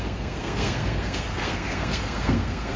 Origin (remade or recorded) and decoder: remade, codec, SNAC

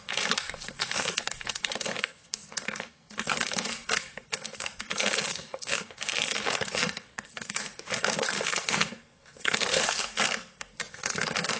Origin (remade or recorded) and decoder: remade, codec, SNAC